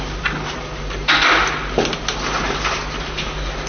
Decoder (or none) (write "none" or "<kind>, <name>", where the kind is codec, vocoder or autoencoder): none